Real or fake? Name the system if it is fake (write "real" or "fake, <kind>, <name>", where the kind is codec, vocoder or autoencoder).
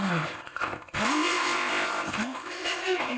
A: fake, codec, ZipCodec